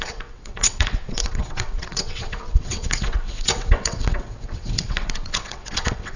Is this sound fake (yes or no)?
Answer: yes